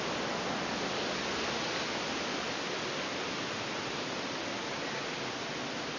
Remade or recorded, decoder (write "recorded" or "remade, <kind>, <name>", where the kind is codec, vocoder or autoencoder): recorded